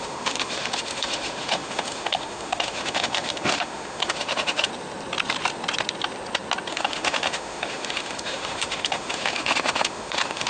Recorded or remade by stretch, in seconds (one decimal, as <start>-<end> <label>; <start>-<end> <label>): 0.0-4.7 remade; 4.7-6.7 recorded; 6.7-10.5 remade